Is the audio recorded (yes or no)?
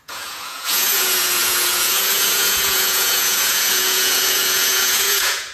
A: no